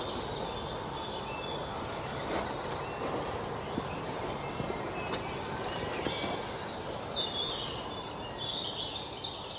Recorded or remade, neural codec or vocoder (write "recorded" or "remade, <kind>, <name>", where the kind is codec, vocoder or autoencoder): recorded